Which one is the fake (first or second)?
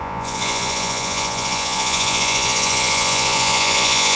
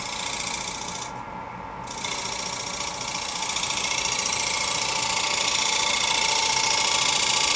first